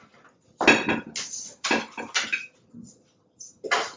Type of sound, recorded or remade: recorded